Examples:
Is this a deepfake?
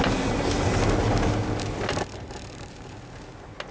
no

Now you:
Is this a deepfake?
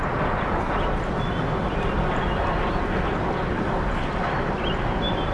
no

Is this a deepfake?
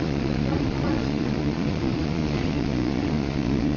yes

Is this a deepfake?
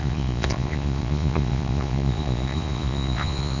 yes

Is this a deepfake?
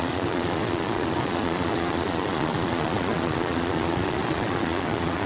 yes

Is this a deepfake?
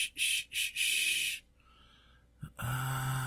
no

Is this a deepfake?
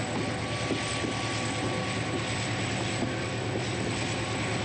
no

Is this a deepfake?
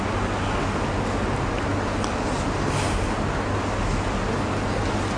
no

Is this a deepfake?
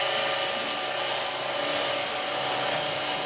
no